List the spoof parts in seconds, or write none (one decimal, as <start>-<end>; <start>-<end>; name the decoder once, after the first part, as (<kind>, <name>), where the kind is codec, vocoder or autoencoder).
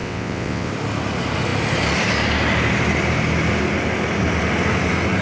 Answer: 0.0-0.7 (vocoder, WaveNeXt)